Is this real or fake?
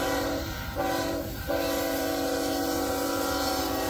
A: fake